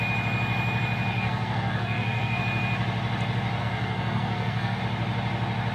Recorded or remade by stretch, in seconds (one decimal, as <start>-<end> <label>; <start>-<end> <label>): 0.0-1.1 recorded; 1.1-2.4 remade; 2.4-3.6 recorded; 3.6-4.8 remade; 4.8-5.7 recorded